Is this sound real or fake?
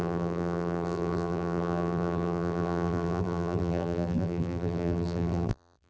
fake